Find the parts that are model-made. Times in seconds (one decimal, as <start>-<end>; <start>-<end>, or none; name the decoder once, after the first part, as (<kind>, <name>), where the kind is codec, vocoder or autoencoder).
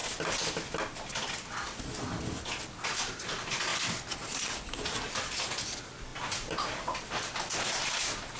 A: none